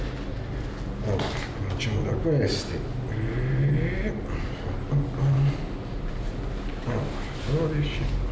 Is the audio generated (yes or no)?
no